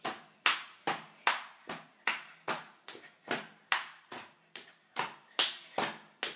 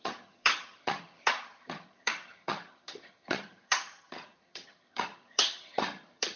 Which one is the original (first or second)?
first